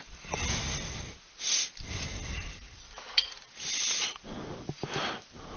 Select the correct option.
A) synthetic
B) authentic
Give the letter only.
B